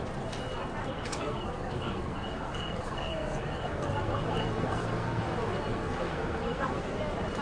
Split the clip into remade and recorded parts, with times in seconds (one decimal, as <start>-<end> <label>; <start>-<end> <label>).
0.0-0.8 recorded; 0.8-5.2 remade; 5.2-5.7 recorded; 5.7-7.0 remade; 7.0-7.4 recorded

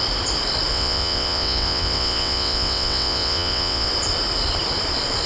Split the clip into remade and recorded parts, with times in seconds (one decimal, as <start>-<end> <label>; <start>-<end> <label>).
0.0-0.7 recorded; 0.7-3.9 remade; 3.9-5.3 recorded

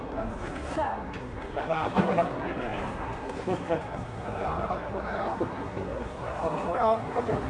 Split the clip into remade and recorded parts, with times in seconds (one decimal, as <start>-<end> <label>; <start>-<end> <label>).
0.0-7.5 remade

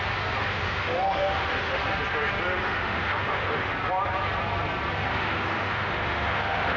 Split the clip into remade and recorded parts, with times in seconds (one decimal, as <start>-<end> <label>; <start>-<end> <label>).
0.0-0.4 recorded; 0.4-1.8 remade; 1.8-2.6 recorded; 2.6-3.7 remade; 3.7-5.1 recorded; 5.1-6.8 remade

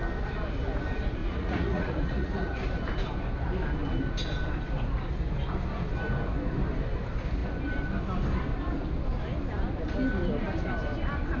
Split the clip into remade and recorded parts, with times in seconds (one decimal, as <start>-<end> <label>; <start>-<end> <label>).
0.0-1.2 recorded; 1.2-2.6 remade; 2.6-11.4 recorded